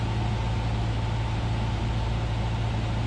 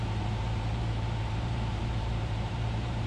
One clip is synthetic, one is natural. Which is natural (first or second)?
first